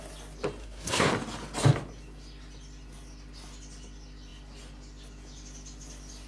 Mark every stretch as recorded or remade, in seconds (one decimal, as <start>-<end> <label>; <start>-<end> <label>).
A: 0.0-0.6 recorded; 0.6-1.1 remade; 1.1-6.3 recorded